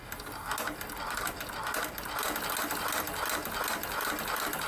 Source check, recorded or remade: recorded